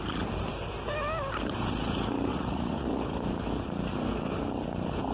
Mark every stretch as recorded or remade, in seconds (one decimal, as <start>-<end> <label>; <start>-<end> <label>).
0.0-2.3 recorded; 2.3-3.0 remade; 3.0-5.1 recorded